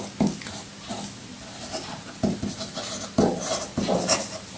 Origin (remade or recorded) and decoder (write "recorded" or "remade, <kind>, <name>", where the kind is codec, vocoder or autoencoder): recorded